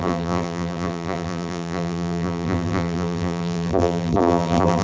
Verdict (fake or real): fake